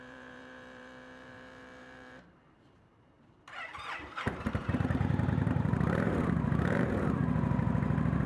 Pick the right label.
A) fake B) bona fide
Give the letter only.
A